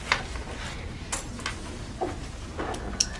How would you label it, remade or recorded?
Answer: recorded